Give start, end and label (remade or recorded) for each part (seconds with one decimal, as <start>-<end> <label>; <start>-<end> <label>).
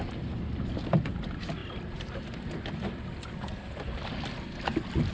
0.0-5.1 recorded